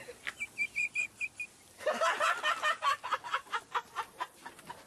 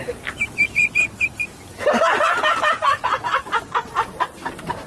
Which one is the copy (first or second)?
second